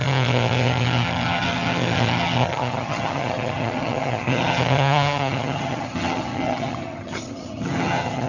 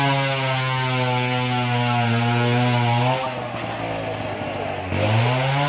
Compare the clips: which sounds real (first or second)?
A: second